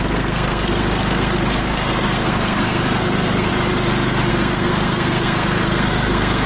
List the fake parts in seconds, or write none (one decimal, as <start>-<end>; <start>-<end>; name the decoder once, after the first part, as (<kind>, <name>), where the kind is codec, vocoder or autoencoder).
0.0-3.5 (codec, SNAC); 4.3-6.5